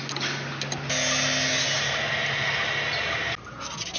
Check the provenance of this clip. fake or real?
real